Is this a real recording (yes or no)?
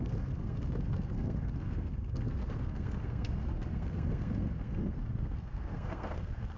no